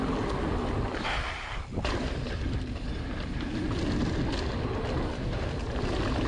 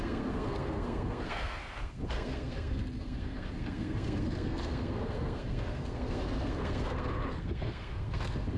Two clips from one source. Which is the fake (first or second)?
second